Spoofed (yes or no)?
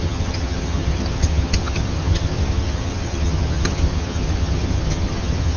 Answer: yes